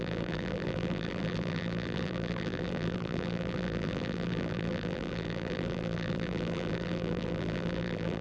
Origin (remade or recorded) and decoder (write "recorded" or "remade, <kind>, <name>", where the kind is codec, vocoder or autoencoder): remade, vocoder, BigVGAN v2